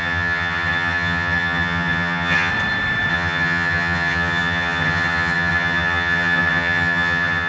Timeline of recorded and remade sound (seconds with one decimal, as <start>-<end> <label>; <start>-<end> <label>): 0.0-2.5 remade; 2.5-3.1 recorded; 3.1-7.5 remade